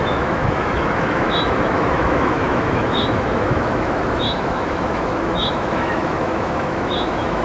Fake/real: fake